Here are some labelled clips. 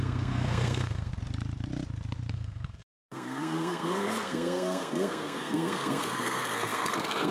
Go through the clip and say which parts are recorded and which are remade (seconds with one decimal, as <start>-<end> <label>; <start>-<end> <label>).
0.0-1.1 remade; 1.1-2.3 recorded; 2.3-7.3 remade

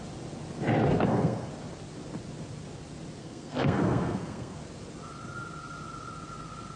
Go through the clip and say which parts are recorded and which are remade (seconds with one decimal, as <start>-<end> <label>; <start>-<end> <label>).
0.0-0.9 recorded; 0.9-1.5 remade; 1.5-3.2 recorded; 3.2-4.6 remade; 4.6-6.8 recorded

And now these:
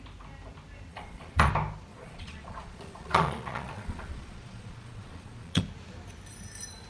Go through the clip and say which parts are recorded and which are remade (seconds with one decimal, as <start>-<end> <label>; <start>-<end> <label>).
0.0-0.9 recorded; 0.9-1.5 remade; 1.5-1.9 recorded; 1.9-5.6 remade; 5.6-6.9 recorded

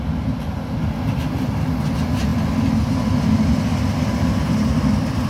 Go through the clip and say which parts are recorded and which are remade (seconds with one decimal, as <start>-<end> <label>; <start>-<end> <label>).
0.0-5.3 recorded

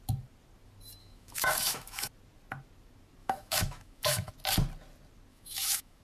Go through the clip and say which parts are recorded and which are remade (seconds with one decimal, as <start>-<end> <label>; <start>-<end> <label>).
0.0-1.0 recorded; 1.0-2.1 remade; 2.1-3.2 recorded; 3.2-4.3 remade; 4.3-5.3 recorded; 5.3-6.0 remade

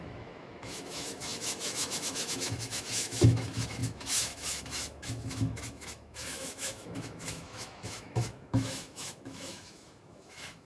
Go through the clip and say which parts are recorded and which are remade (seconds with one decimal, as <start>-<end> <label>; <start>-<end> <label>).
0.0-10.6 remade

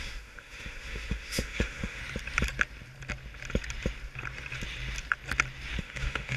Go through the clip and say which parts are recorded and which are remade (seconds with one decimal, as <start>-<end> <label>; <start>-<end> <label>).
0.0-2.0 remade; 2.0-5.8 recorded; 5.8-6.4 remade

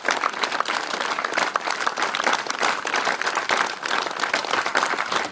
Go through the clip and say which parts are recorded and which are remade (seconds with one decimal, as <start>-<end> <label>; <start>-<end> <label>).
0.0-0.9 recorded; 0.9-2.3 remade; 2.3-4.4 recorded; 4.4-5.3 remade